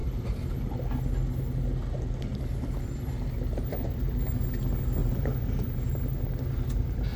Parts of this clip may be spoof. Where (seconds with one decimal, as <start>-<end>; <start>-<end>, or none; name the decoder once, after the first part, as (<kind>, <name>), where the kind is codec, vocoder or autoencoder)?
0.0-0.6 (vocoder, BigVGAN v2); 5.0-7.2